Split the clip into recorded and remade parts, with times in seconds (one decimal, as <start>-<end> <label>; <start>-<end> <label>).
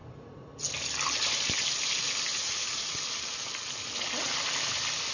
0.0-0.5 remade; 0.5-2.3 recorded; 2.3-3.0 remade; 3.0-5.1 recorded